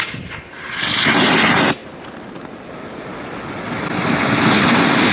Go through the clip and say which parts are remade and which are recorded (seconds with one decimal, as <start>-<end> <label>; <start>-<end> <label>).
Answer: 0.0-5.1 recorded